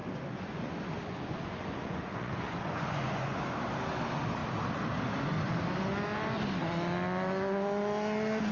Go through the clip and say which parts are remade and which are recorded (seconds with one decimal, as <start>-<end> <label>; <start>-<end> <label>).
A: 0.0-3.4 remade; 3.4-8.5 recorded